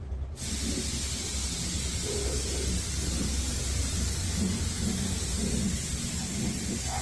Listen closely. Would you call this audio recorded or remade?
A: recorded